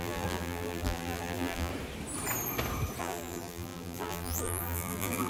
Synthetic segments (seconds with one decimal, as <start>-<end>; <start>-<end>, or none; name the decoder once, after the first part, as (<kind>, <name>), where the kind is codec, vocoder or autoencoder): 0.0-1.7 (vocoder, BigVGAN v2); 3.0-5.3